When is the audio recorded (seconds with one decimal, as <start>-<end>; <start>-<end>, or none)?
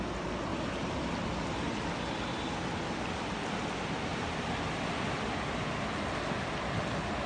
0.0-7.3